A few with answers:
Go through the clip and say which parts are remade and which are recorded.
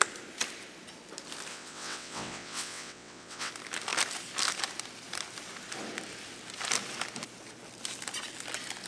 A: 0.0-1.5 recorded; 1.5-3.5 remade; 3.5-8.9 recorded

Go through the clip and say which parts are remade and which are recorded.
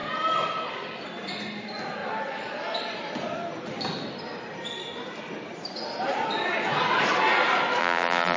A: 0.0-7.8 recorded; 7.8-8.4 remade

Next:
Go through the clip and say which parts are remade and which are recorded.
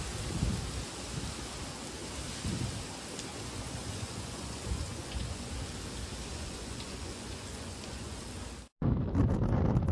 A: 0.0-3.3 recorded; 3.3-5.5 remade; 5.5-6.3 recorded; 6.3-8.2 remade; 8.2-9.9 recorded